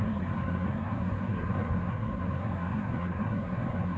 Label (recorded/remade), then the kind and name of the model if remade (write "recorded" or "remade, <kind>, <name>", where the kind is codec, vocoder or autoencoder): remade, codec, SNAC